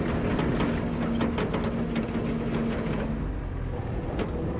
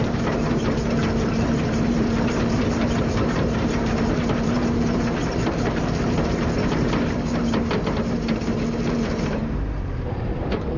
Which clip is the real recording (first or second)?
first